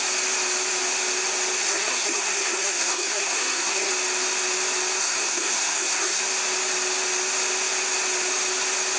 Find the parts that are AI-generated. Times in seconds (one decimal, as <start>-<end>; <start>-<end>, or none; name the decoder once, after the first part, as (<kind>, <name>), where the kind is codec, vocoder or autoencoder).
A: 1.6-3.9 (codec, SNAC); 5.0-6.2